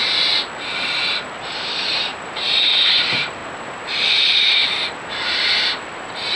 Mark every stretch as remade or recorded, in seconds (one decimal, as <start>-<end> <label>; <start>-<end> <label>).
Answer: 0.0-0.6 recorded; 0.6-6.4 remade